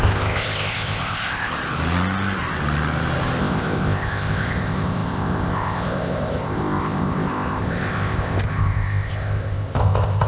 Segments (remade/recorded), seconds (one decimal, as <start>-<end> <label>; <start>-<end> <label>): 0.0-1.5 remade; 1.5-3.4 recorded; 3.4-10.3 remade